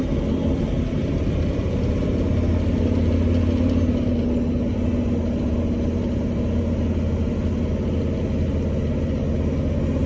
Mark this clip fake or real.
real